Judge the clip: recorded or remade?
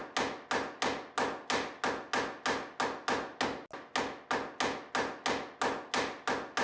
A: recorded